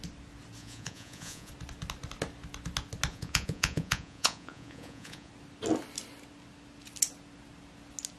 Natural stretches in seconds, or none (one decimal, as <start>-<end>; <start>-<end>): 0.0-0.6; 1.5-3.1; 5.3-8.2